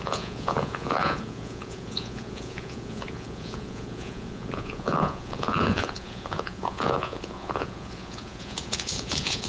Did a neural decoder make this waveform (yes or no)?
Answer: yes